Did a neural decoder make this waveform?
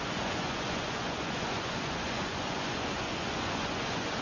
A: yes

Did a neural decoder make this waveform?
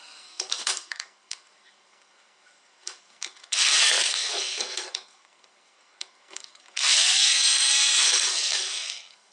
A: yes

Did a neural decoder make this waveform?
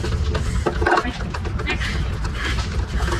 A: no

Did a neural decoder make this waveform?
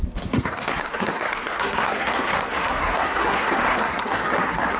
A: yes